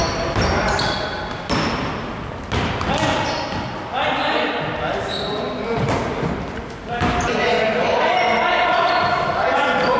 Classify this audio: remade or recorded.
recorded